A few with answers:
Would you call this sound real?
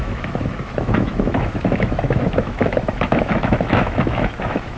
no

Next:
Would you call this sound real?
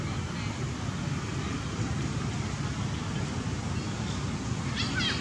yes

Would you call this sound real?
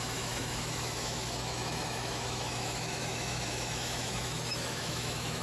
no